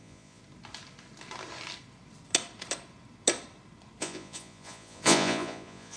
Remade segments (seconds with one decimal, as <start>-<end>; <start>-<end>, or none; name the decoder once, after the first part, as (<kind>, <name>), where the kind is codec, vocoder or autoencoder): 0.0-0.4 (vocoder, Vocos); 4.0-6.0